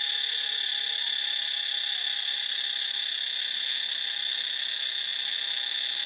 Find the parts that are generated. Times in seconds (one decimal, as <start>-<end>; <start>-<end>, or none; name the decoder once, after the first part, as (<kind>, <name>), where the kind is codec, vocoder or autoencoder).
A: none